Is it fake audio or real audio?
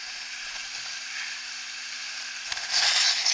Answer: real